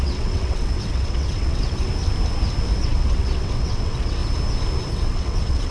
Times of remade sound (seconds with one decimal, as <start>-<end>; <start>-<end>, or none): 0.0-1.9; 2.8-4.2; 4.9-5.7